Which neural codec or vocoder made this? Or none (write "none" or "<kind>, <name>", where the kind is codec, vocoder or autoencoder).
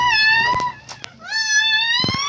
none